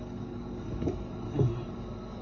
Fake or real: fake